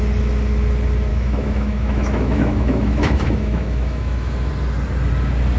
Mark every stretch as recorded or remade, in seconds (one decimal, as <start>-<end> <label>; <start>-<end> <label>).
0.0-1.1 recorded; 1.1-4.5 remade; 4.5-5.6 recorded